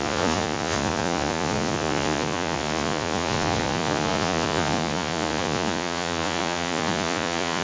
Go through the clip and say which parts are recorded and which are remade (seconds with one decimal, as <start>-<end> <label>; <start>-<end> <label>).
0.0-7.6 remade